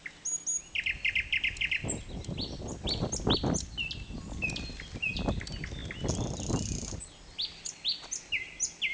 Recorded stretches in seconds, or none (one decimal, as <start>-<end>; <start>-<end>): 0.0-8.9